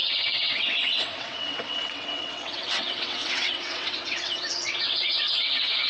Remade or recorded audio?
remade